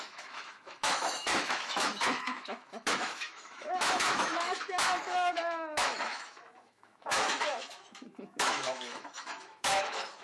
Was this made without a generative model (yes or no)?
no